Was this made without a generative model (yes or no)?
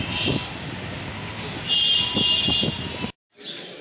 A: yes